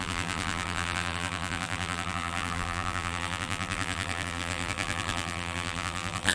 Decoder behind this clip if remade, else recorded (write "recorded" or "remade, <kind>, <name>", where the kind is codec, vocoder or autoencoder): remade, vocoder, BigVGAN v2